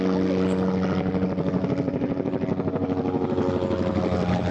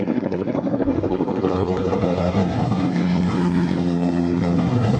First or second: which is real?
first